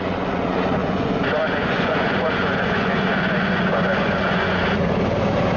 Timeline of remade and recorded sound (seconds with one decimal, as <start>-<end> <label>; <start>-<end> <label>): 0.0-4.6 remade; 4.6-5.6 recorded